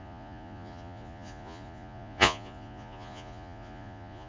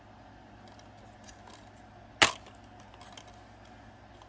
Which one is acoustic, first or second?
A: second